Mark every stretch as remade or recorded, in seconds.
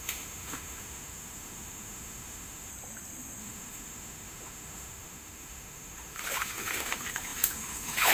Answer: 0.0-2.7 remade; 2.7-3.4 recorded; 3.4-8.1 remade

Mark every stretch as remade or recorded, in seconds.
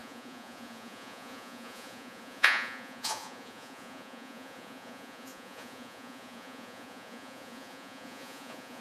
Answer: 0.0-8.8 remade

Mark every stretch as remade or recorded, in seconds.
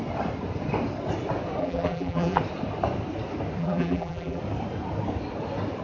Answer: 0.0-1.6 recorded; 1.6-2.4 remade; 2.4-3.6 recorded; 3.6-4.4 remade; 4.4-5.8 recorded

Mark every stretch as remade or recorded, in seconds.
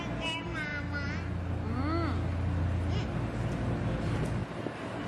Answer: 0.0-5.1 recorded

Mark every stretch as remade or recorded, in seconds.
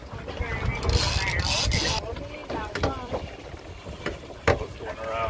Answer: 0.0-2.0 recorded; 2.0-5.3 remade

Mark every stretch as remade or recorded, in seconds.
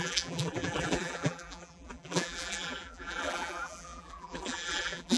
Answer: 0.0-5.2 remade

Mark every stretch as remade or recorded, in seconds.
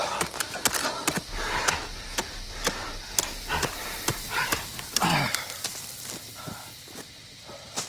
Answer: 0.0-7.9 recorded